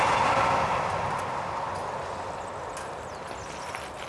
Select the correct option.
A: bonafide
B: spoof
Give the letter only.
A